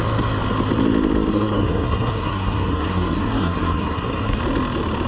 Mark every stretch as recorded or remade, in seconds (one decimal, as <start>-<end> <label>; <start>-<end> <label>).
0.0-1.3 recorded; 1.3-4.4 remade; 4.4-5.1 recorded